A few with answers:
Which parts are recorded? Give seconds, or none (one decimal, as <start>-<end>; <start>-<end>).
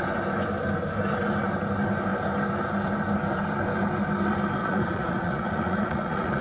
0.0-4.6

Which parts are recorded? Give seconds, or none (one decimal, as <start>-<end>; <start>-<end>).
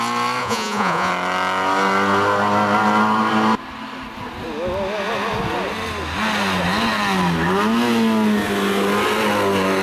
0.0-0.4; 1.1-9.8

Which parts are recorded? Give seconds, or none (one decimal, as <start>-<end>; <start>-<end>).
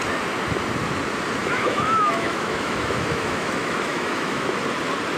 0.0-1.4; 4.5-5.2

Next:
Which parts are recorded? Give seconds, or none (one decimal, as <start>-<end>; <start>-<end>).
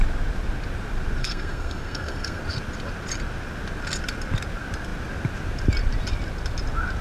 0.0-1.2; 2.4-7.0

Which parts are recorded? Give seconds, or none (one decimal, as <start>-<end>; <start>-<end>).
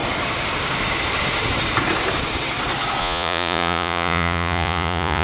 0.0-3.0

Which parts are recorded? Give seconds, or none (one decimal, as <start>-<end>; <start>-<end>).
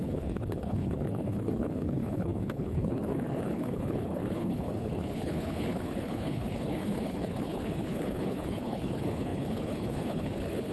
none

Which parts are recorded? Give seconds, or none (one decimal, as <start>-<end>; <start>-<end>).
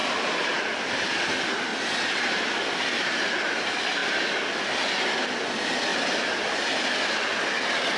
0.0-8.0